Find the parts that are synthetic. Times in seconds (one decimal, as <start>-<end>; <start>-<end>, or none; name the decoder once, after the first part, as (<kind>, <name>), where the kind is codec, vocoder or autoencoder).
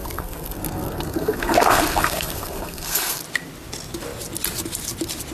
0.0-3.2 (codec, SNAC)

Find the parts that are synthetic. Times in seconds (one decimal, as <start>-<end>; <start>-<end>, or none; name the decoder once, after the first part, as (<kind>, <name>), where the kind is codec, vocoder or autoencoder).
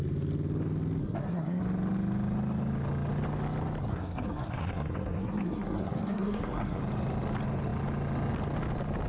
1.0-1.6 (codec, SNAC); 3.9-6.8